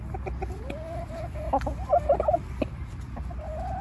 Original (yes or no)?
yes